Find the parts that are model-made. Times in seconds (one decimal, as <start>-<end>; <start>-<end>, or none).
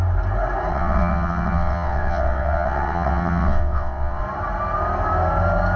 0.7-4.2